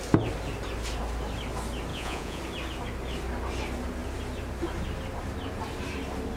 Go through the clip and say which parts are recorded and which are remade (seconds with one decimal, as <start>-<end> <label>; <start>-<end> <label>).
0.0-1.9 recorded; 1.9-2.4 remade; 2.4-6.4 recorded